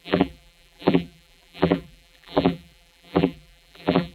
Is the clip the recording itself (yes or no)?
no